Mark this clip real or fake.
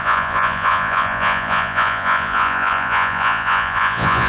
fake